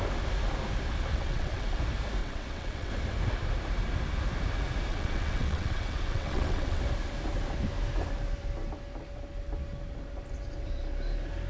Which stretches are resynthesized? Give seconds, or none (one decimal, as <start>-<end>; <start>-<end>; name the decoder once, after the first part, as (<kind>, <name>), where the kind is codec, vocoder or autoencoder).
1.1-1.8 (vocoder, WaveNeXt); 2.2-2.9; 4.9-6.8